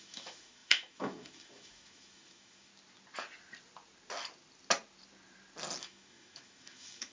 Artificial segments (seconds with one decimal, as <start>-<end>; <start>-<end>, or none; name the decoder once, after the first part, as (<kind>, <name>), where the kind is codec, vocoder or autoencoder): 0.0-2.7 (autoencoder, DAC-VAE); 5.8-7.1

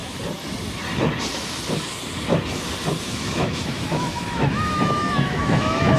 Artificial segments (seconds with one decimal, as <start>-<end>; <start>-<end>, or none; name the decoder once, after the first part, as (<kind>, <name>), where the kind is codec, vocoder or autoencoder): 3.0-6.0 (autoencoder, DAC-VAE)

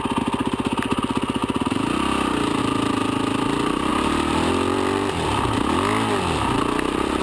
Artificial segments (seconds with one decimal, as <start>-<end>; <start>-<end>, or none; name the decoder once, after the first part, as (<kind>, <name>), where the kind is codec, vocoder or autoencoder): 0.4-1.0 (vocoder, BigVGAN v2); 1.4-2.6; 3.9-5.5